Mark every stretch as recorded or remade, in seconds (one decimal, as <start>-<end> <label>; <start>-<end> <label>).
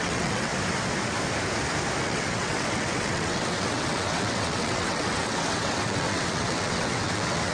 0.0-0.5 remade; 0.5-2.0 recorded; 2.0-7.5 remade